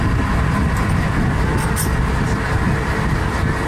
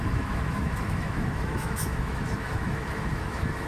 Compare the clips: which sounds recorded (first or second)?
first